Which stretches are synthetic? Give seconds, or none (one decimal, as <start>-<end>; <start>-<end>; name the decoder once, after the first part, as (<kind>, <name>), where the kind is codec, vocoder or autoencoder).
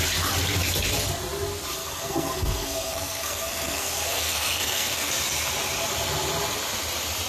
1.8-5.1 (codec, SNAC)